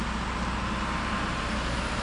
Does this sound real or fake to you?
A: real